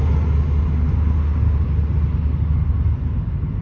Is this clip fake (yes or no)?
no